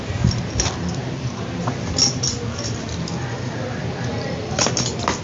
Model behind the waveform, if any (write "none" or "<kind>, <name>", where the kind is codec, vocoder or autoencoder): none